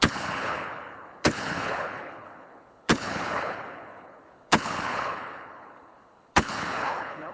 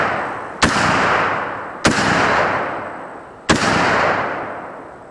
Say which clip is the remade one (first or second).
first